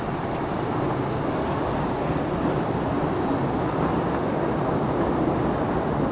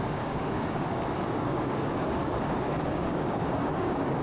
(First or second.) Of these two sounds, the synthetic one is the second